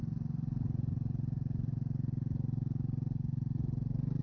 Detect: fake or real real